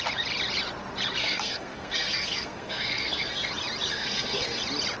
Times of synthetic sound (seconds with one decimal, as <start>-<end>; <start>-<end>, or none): 1.2-3.5; 3.9-4.6